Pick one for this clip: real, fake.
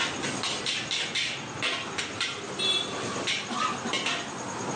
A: real